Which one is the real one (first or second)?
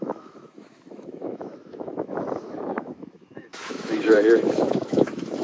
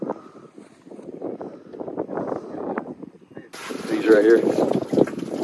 second